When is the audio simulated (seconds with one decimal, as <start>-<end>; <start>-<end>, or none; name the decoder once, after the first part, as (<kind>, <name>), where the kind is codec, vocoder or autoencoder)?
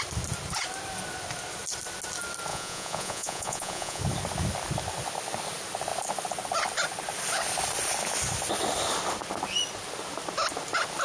2.5-4.0 (vocoder, Vocos)